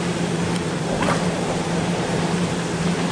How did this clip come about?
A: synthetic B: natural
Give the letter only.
A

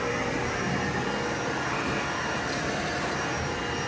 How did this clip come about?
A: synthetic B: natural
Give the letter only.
B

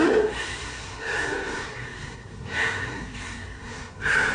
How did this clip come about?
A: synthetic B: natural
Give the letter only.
A